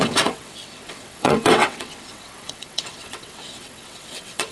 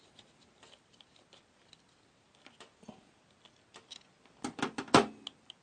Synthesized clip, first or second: first